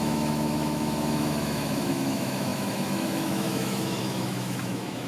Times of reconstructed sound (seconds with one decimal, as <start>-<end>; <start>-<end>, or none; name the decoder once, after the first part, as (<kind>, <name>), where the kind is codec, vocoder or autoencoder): 0.0-5.1 (autoencoder, DAC-VAE)